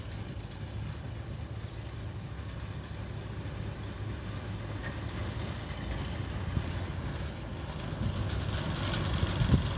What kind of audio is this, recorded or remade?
recorded